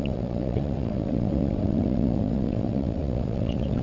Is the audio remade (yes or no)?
yes